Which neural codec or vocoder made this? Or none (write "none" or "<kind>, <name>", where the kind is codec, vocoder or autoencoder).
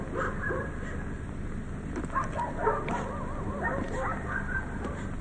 none